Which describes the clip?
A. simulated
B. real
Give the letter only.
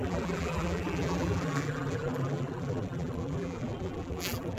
A